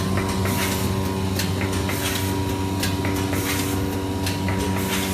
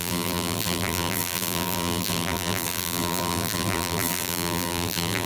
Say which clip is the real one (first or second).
first